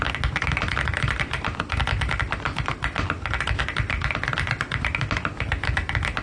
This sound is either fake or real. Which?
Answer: real